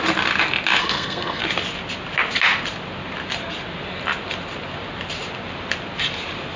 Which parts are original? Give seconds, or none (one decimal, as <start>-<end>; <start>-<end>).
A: 0.0-0.8; 1.4-6.6